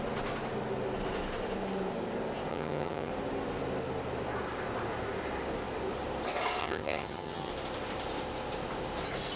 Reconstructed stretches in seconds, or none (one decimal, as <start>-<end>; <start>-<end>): 2.5-3.1; 6.6-7.5